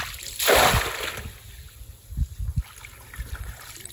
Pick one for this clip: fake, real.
real